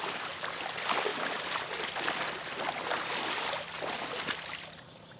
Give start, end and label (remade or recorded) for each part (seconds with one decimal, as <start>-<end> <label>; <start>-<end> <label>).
0.0-5.2 recorded

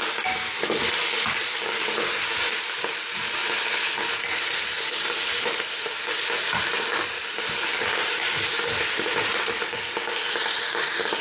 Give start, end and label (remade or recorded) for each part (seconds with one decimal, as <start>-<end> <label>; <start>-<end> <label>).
0.0-1.0 recorded; 1.0-1.7 remade; 1.7-7.2 recorded; 7.2-9.5 remade; 9.5-11.2 recorded